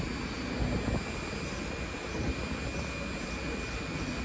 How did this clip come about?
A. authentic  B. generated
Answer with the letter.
A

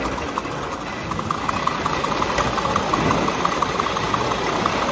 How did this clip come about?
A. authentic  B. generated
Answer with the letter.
A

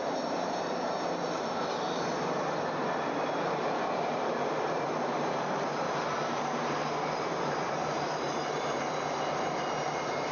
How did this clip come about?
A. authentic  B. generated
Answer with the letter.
B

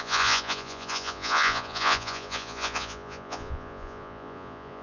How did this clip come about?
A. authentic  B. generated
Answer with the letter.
B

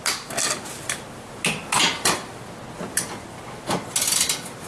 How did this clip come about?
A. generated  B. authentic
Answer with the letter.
B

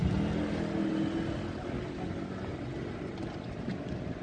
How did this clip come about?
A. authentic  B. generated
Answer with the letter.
A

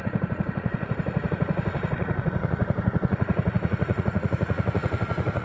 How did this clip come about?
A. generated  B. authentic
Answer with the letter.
A